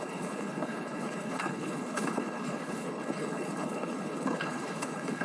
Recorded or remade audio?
remade